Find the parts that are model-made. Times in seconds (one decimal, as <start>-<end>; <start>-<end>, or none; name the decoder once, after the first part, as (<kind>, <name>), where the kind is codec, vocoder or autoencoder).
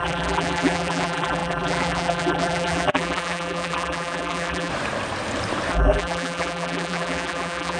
0.0-4.7 (vocoder, BigVGAN v2); 5.7-7.8